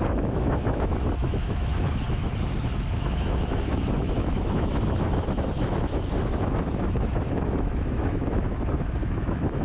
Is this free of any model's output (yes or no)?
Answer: no